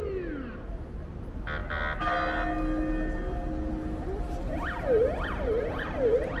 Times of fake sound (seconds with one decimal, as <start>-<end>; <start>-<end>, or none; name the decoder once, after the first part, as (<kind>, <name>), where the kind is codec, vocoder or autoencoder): none